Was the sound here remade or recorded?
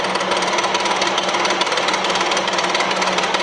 recorded